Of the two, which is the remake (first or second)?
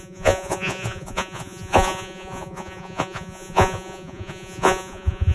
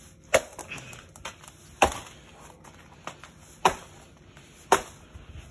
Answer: first